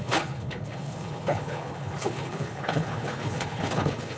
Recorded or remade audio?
remade